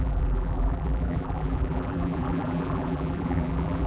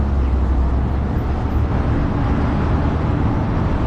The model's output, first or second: first